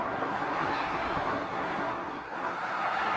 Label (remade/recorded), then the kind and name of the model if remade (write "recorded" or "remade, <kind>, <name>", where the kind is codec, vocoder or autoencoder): remade, codec, SNAC